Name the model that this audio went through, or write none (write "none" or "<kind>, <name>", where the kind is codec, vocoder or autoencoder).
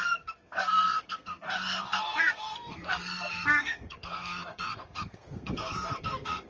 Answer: codec, SNAC